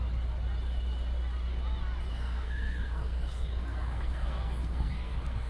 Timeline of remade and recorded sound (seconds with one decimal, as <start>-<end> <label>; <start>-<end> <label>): 0.0-2.1 recorded; 2.1-5.5 remade